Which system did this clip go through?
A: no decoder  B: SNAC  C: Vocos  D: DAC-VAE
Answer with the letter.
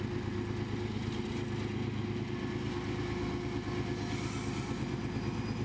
A